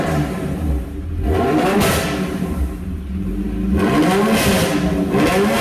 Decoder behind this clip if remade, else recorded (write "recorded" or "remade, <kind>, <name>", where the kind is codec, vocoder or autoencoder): recorded